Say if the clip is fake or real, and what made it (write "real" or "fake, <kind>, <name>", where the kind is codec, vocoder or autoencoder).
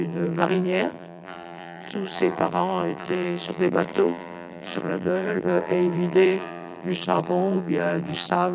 fake, vocoder, BigVGAN v2